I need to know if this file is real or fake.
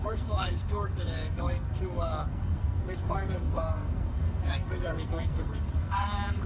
fake